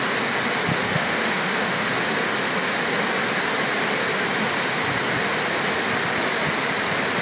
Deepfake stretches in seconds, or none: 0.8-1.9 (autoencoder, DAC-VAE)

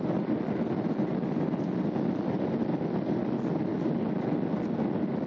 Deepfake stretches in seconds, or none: none